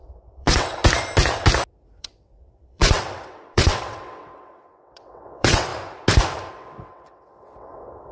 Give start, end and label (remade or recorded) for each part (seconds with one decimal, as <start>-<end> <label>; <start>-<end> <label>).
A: 0.0-0.8 remade; 0.8-2.0 recorded; 2.0-5.7 remade; 5.7-6.5 recorded; 6.5-8.1 remade